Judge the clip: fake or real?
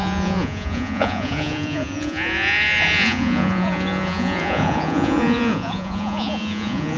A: fake